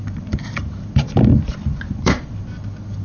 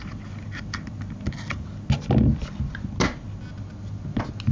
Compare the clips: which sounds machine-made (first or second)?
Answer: first